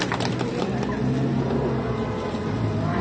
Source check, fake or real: real